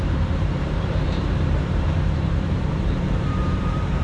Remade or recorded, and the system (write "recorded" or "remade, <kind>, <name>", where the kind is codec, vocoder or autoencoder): remade, vocoder, BigVGAN v2